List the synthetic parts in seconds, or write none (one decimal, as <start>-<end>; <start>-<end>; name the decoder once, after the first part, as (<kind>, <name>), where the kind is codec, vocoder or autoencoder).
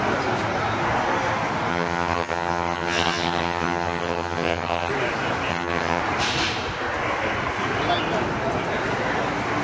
1.7-4.9 (vocoder, HiFi-GAN); 5.5-6.0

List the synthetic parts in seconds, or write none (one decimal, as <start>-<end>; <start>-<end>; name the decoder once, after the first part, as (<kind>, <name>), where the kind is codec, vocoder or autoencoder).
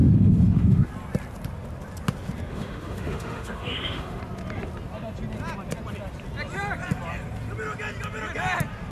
0.0-0.9 (autoencoder, DAC-VAE); 2.5-4.2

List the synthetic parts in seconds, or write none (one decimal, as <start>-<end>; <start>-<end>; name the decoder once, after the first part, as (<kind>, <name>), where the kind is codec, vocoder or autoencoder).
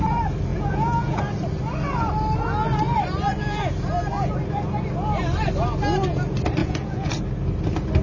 0.5-1.2 (vocoder, Vocos); 6.6-7.1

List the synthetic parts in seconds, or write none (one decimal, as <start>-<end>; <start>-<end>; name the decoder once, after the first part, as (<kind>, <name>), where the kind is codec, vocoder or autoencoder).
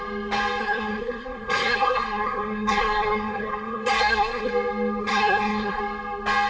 0.6-4.5 (codec, SNAC); 5.0-5.8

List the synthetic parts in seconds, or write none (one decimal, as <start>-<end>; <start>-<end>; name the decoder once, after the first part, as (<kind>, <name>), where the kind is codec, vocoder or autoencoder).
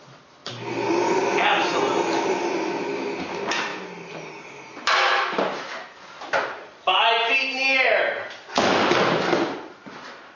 none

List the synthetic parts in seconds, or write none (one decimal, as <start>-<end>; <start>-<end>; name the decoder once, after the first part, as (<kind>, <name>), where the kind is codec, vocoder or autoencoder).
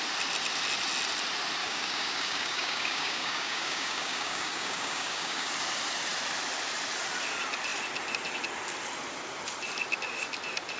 1.6-5.5 (codec, DAC)